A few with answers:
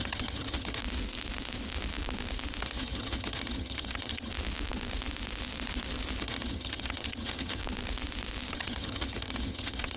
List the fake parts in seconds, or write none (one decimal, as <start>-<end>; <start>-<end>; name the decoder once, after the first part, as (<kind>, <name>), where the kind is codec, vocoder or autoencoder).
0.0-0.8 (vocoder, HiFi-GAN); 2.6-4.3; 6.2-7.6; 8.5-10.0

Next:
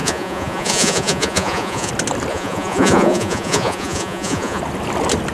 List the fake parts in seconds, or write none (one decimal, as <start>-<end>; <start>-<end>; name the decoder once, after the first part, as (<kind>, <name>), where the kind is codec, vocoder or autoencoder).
0.0-1.9 (vocoder, Vocos); 2.3-4.6

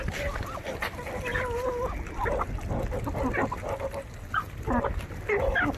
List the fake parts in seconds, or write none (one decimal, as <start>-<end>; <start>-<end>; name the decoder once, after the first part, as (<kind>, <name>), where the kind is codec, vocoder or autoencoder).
none

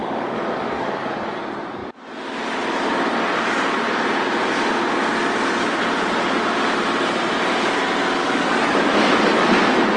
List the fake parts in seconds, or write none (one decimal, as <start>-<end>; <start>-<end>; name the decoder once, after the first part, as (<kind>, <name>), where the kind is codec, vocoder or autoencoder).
0.0-1.4 (codec, DAC); 8.2-8.9